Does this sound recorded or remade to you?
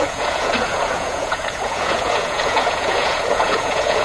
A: remade